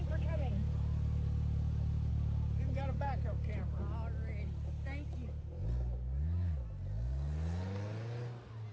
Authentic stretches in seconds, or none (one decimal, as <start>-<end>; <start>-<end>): 0.0-2.1; 3.8-8.7